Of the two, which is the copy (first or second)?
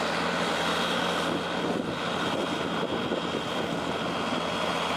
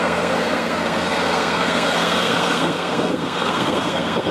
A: second